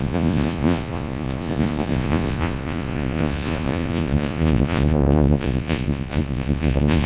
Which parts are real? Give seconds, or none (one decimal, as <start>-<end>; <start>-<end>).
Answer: none